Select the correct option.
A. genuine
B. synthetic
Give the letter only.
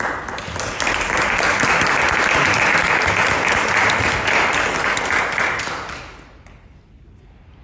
A